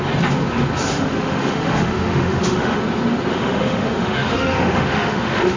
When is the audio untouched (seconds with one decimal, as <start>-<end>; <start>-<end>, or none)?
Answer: 0.0-0.9; 2.8-3.3